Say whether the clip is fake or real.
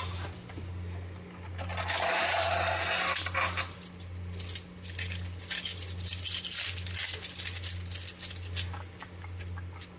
real